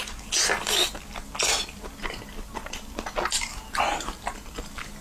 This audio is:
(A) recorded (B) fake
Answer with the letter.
A